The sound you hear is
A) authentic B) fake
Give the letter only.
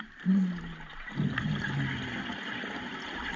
A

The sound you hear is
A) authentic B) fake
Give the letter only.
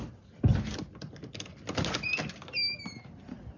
A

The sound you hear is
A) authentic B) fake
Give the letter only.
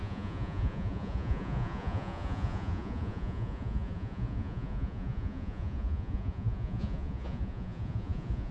B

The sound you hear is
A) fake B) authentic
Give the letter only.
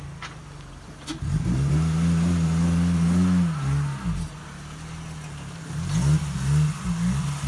B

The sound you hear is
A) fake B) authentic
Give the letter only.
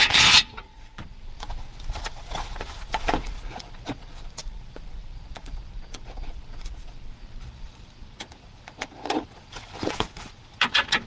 A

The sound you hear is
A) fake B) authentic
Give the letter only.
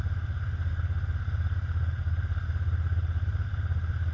B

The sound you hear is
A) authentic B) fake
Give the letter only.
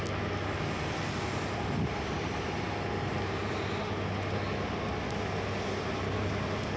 A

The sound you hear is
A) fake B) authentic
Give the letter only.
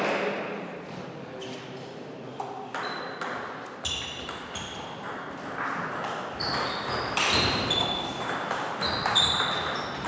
B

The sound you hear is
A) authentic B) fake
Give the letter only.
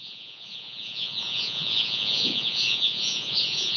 B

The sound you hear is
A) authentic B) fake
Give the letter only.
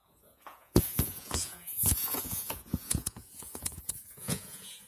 B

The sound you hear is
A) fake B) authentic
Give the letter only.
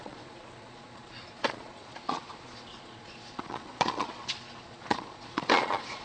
A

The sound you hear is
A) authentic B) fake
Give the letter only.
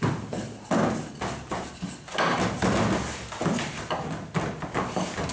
A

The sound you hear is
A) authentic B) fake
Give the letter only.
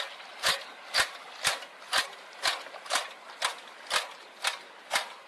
A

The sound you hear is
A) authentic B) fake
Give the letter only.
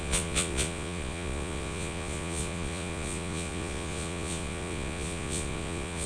B